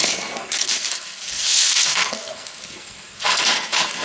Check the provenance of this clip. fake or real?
fake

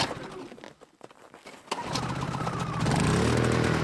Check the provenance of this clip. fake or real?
real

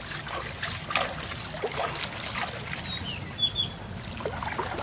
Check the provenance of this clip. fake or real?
real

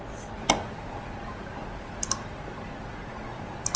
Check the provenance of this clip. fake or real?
real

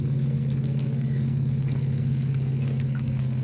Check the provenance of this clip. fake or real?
fake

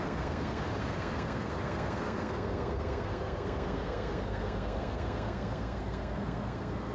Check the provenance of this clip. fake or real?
fake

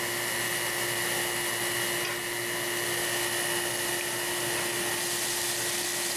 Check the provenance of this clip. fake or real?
real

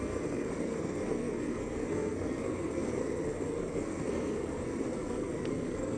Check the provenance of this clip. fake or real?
fake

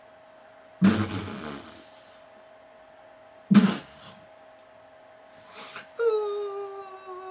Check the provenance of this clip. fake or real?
real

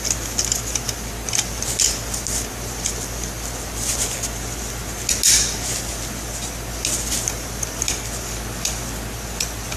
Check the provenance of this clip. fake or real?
real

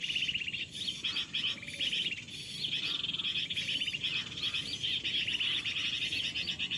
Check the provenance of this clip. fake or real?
real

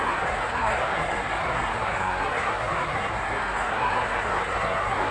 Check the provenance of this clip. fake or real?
fake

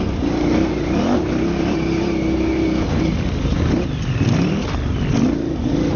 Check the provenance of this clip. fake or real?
real